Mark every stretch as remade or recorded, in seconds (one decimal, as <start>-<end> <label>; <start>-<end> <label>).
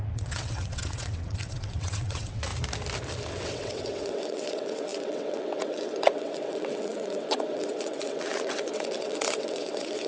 0.0-2.5 remade; 2.5-3.3 recorded; 3.3-10.1 remade